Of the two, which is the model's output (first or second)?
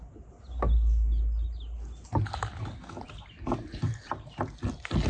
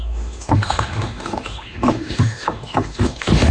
second